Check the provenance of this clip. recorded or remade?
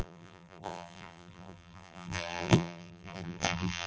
remade